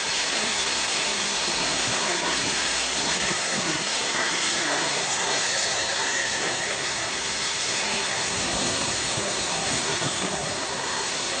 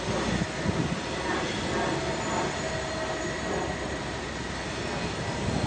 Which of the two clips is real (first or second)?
second